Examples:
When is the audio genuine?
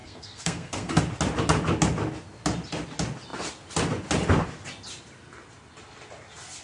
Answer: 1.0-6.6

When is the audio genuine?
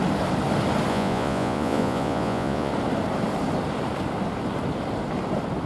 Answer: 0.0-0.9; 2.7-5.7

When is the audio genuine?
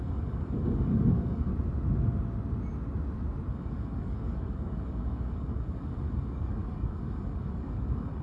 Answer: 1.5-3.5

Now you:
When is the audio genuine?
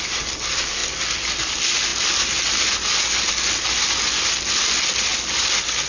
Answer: 0.0-5.9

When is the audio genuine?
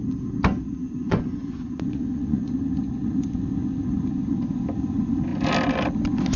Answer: 0.0-0.8; 2.5-6.4